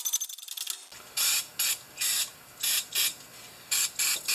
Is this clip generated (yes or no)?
no